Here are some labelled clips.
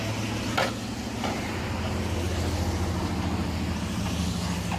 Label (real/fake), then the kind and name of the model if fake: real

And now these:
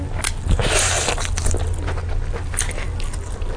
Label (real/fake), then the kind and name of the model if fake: real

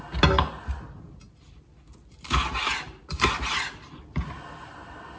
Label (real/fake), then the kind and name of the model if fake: real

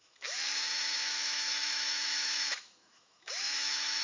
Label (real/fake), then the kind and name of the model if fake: fake, autoencoder, DAC-VAE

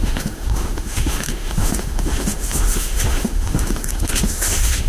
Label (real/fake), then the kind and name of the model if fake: fake, autoencoder, DAC-VAE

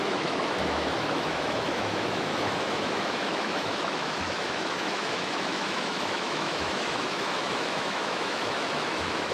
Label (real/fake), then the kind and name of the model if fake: fake, autoencoder, DAC-VAE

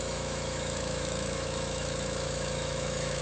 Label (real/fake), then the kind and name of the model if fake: fake, autoencoder, DAC-VAE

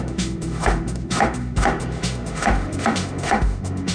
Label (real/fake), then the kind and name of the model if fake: fake, autoencoder, DAC-VAE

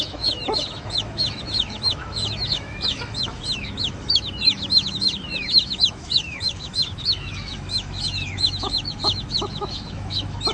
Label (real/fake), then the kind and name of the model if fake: fake, autoencoder, DAC-VAE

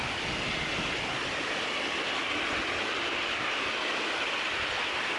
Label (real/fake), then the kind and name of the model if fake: real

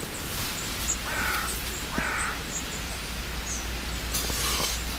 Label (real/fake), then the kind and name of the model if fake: real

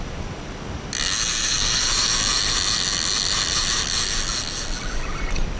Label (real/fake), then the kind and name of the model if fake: real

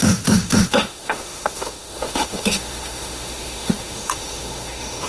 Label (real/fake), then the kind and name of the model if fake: fake, autoencoder, DAC-VAE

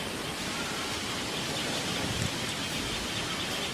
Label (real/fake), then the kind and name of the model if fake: real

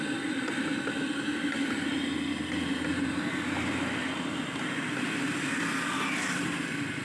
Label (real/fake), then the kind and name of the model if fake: real